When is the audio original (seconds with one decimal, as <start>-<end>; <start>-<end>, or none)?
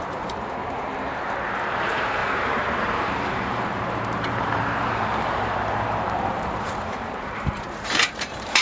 0.6-1.5